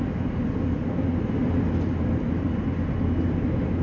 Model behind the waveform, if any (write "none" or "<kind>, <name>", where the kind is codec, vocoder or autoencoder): none